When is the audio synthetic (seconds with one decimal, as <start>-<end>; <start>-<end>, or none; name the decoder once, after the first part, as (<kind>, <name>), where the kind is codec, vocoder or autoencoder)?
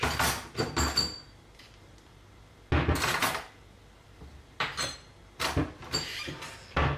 none